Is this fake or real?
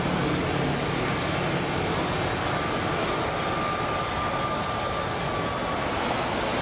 real